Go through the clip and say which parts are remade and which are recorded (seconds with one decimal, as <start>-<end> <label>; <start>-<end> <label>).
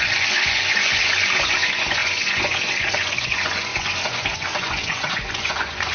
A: 0.0-5.9 remade